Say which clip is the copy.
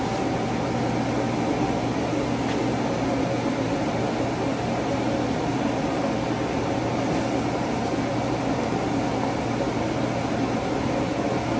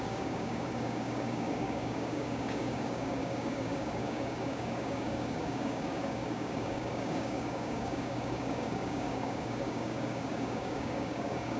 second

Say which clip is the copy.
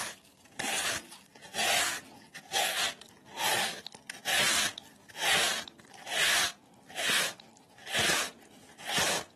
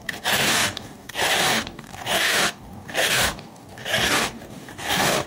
second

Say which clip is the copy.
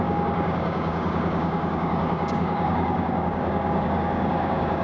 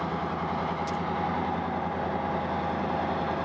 first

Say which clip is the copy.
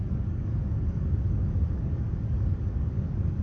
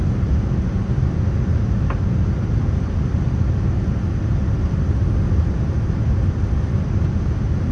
first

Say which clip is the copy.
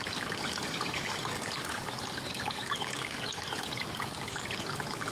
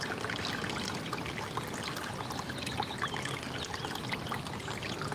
first